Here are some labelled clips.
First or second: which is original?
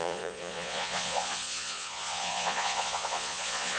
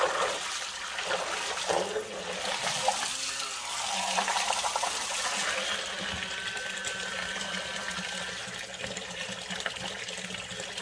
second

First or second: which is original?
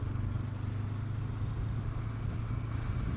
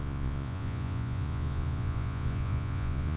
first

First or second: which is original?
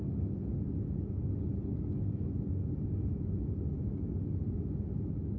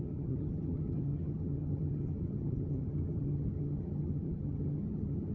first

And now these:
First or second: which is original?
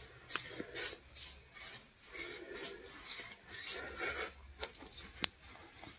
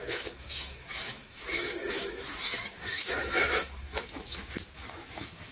first